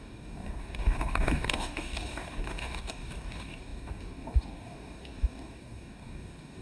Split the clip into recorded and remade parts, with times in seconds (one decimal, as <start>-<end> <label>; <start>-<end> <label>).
0.0-6.6 remade